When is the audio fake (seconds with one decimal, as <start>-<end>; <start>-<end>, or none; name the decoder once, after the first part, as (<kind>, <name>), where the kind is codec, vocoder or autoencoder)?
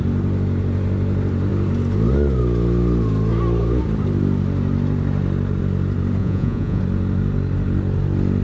6.2-6.8 (vocoder, Vocos)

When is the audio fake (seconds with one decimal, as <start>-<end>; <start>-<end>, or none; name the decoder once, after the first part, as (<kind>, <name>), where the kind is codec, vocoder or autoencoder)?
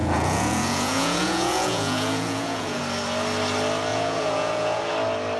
0.0-2.8 (vocoder, Vocos); 3.9-4.8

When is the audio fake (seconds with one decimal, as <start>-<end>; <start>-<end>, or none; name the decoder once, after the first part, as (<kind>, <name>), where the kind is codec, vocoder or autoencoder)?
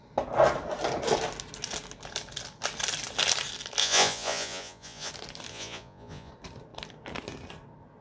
3.8-5.1 (vocoder, Vocos); 5.5-6.3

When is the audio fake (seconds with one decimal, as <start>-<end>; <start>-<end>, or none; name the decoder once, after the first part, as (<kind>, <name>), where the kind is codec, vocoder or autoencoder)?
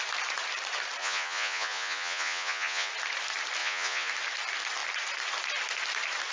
1.0-2.9 (vocoder, Vocos); 3.6-4.1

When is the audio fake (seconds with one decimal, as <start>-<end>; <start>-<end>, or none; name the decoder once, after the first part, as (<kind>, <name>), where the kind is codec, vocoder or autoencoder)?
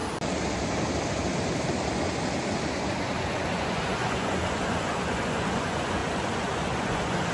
2.7-7.3 (vocoder, Vocos)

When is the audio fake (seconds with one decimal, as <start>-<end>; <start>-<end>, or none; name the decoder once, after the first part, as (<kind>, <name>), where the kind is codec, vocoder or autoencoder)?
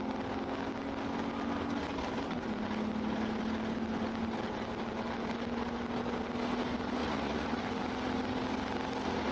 7.0-7.6 (vocoder, Vocos)